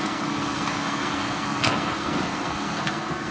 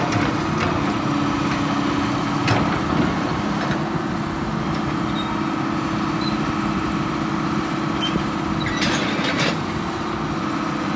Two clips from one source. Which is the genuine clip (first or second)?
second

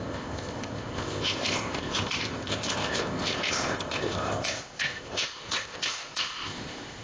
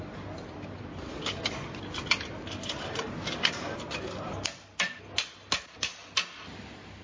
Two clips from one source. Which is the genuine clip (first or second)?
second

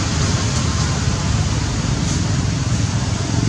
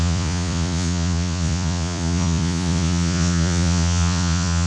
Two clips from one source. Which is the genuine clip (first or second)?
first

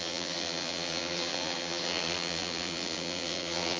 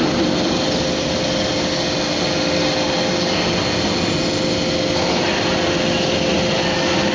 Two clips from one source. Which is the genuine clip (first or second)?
second